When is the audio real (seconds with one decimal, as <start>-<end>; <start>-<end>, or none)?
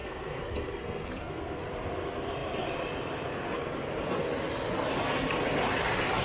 1.6-6.2